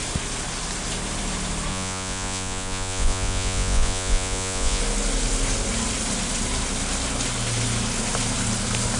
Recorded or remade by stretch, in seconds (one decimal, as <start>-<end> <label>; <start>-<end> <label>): 0.0-1.7 recorded; 1.7-4.8 remade; 4.8-9.0 recorded